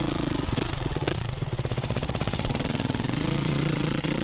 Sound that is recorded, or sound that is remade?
remade